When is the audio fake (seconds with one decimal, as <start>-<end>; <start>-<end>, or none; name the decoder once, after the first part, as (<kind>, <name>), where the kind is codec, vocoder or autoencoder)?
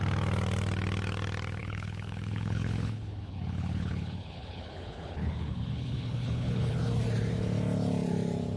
1.6-6.8 (codec, HILCodec)